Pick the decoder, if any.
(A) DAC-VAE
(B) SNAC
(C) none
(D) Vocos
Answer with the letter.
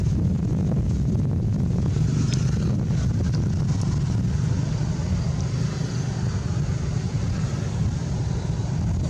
C